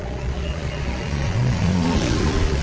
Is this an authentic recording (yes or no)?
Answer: no